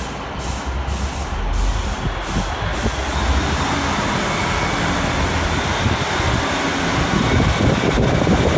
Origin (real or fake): real